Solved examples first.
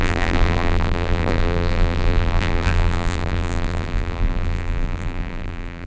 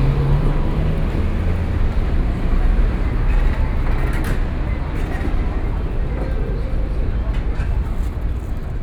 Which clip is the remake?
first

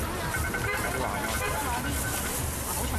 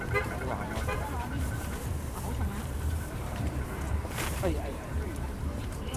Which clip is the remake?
second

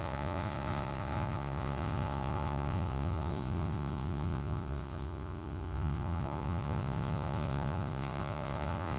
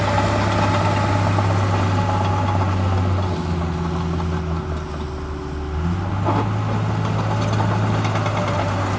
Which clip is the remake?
first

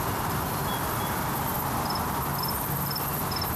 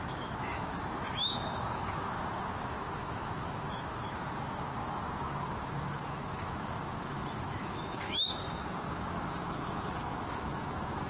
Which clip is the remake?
second